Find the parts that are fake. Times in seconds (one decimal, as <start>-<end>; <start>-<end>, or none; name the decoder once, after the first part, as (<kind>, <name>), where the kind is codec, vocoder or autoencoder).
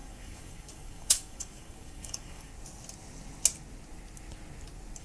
0.0-2.5 (codec, DAC)